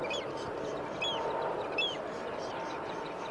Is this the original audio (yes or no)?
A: yes